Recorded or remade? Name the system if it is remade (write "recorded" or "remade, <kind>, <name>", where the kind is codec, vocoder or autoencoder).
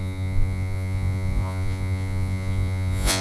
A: remade, vocoder, Vocos